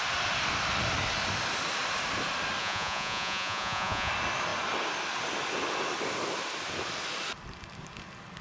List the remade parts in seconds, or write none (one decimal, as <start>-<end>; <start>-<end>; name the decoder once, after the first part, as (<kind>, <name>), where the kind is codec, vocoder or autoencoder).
2.6-4.1 (vocoder, Vocos)